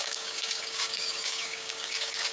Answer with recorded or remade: remade